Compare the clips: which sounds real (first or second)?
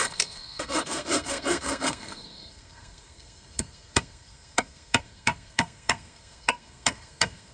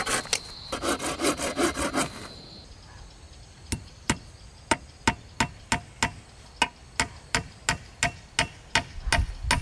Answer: second